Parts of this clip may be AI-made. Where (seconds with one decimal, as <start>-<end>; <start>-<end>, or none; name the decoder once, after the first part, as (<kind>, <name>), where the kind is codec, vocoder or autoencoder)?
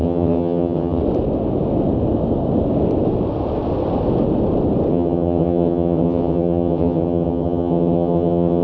0.0-1.0 (vocoder, HiFi-GAN); 4.9-8.6